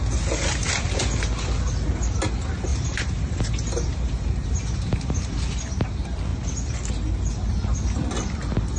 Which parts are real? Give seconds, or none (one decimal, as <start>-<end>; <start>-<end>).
0.0-2.7; 5.5-8.8